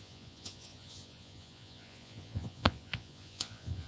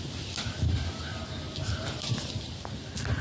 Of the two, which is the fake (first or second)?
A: first